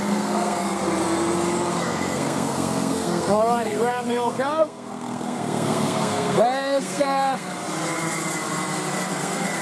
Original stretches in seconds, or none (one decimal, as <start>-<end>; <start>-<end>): 0.8-1.7; 7.6-9.1